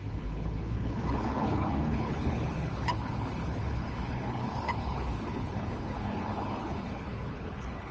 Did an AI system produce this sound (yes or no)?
yes